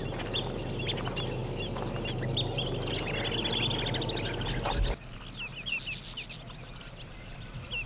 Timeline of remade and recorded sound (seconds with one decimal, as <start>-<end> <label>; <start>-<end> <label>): 0.0-7.9 recorded